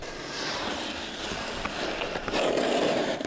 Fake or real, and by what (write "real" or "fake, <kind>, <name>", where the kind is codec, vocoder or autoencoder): fake, vocoder, BigVGAN v2